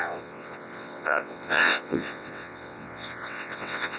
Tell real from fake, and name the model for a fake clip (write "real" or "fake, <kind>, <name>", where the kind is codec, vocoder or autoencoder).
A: fake, vocoder, WaveNeXt